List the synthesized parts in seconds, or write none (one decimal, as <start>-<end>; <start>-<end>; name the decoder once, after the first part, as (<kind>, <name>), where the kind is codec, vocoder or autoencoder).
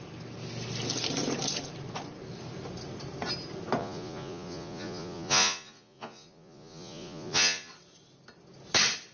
3.8-7.7 (vocoder, Vocos)